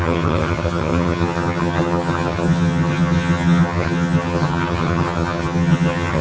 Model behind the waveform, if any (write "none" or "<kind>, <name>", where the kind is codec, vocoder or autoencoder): vocoder, HiFi-GAN